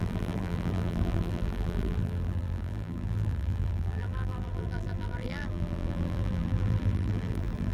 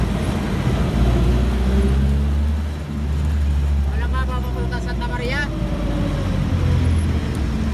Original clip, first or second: second